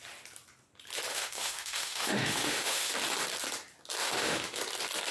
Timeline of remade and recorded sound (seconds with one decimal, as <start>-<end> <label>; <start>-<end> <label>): 0.0-1.1 recorded; 1.1-2.9 remade; 2.9-4.0 recorded; 4.0-4.6 remade; 4.6-5.1 recorded